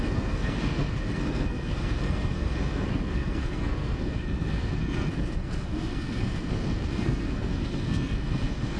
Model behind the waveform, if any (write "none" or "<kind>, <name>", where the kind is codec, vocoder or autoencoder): codec, SNAC